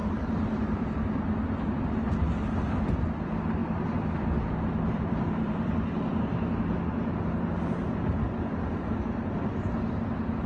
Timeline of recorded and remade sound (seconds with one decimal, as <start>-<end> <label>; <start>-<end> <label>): 0.0-2.1 remade; 2.1-3.6 recorded; 3.6-6.2 remade; 6.2-10.5 recorded